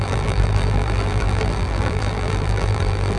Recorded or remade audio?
remade